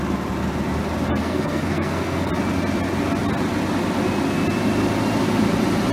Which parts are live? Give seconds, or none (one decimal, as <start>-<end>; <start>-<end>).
0.0-1.1; 2.3-5.9